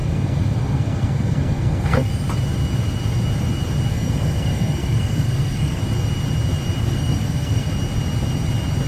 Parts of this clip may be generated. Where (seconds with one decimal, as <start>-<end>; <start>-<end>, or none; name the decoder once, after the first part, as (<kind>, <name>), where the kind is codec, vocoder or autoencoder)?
0.0-2.1 (codec, SNAC); 3.9-5.8; 6.8-7.7